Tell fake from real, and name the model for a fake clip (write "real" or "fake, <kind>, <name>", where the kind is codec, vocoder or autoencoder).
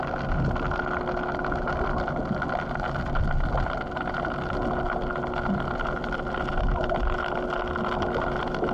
real